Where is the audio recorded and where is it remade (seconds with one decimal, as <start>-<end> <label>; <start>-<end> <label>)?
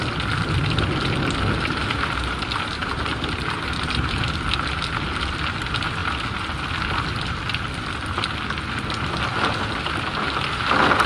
0.0-2.8 recorded; 2.8-4.2 remade; 4.2-11.1 recorded